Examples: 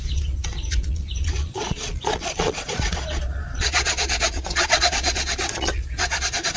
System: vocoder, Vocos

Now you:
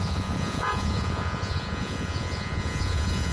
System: vocoder, Vocos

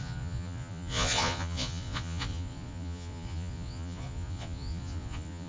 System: vocoder, Vocos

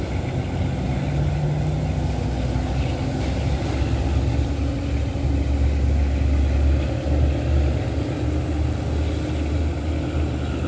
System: none